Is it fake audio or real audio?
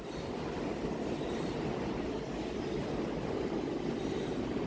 real